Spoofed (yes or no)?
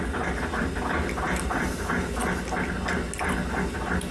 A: no